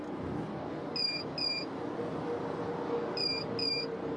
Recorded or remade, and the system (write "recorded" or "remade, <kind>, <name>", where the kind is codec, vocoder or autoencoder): recorded